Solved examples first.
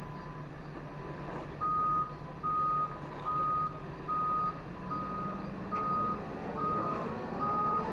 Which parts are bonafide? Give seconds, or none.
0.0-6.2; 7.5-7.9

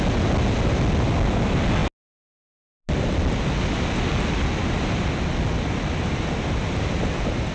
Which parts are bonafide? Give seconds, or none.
0.0-7.5

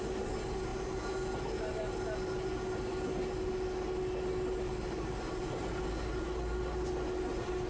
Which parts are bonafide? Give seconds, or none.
0.0-7.7

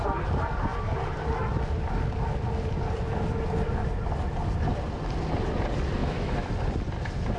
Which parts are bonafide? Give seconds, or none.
0.0-6.0; 6.5-7.4

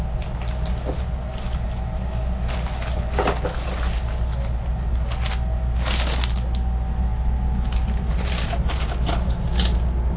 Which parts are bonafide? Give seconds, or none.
0.0-10.2

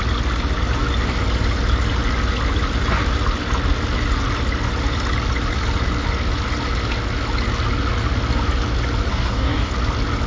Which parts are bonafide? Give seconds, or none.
0.0-9.1; 9.7-10.3

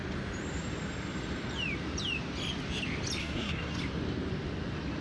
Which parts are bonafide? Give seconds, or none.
0.0-3.2; 3.8-5.0

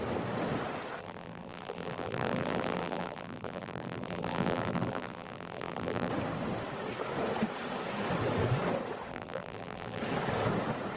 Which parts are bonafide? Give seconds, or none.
0.0-1.0; 6.1-9.1; 10.0-11.0